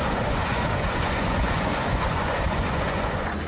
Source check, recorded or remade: remade